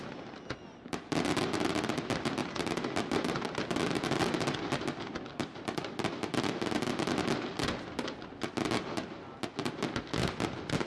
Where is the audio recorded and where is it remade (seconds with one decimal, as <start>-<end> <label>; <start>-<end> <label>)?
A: 0.0-10.9 recorded

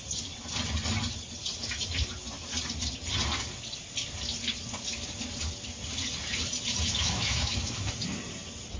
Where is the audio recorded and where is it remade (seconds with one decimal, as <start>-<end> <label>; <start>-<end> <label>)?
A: 0.0-6.9 recorded; 6.9-7.9 remade; 7.9-8.8 recorded

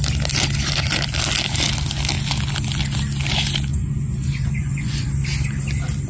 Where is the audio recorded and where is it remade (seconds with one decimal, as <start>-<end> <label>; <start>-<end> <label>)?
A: 0.0-3.7 recorded; 3.7-5.1 remade; 5.1-6.1 recorded

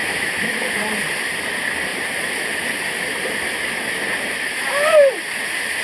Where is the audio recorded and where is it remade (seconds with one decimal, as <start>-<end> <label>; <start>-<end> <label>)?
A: 0.0-0.8 remade; 0.8-5.8 recorded

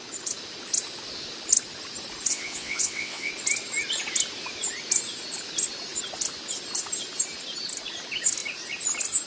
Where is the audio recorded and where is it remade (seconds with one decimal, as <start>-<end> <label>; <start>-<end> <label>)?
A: 0.0-2.3 recorded; 2.3-3.3 remade; 3.3-9.3 recorded

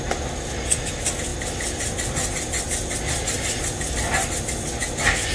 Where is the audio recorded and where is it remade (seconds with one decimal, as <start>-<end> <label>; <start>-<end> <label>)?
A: 0.0-5.3 recorded